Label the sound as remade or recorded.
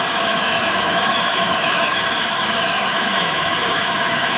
remade